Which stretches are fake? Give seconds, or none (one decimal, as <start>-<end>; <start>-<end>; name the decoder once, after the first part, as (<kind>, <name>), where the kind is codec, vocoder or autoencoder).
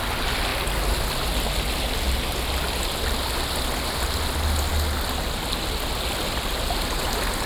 none